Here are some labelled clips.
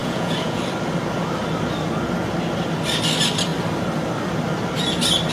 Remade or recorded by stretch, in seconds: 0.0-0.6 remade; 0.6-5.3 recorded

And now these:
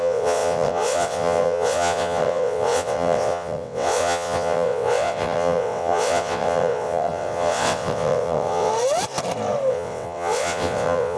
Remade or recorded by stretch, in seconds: 0.0-8.7 remade; 8.7-9.7 recorded; 9.7-11.2 remade

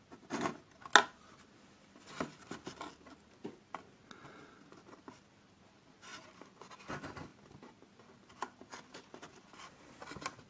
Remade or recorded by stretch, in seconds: 0.0-10.5 recorded

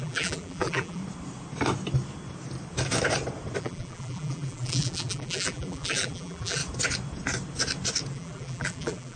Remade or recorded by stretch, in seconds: 0.0-1.0 remade; 1.0-3.6 recorded; 3.6-6.6 remade; 6.6-8.1 recorded; 8.1-9.2 remade